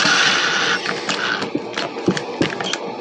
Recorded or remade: recorded